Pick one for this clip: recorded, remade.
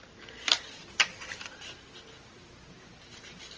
recorded